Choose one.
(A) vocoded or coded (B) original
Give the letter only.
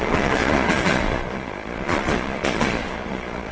A